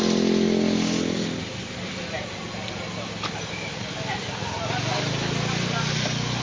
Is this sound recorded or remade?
recorded